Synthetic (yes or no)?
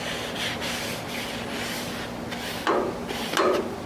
no